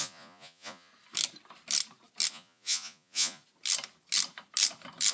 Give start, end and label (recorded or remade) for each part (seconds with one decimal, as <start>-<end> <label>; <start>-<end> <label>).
0.0-0.9 remade; 0.9-2.3 recorded; 2.3-3.4 remade; 3.4-5.1 recorded